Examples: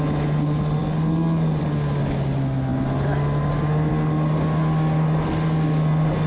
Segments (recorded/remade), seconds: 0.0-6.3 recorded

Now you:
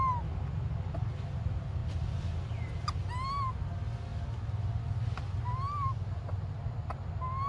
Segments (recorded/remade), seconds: 0.0-7.5 recorded